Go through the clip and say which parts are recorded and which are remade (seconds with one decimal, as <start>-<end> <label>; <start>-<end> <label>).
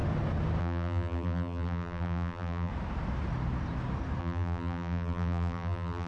0.0-0.6 recorded; 0.6-2.7 remade; 2.7-4.2 recorded; 4.2-6.1 remade